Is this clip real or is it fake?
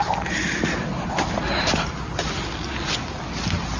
real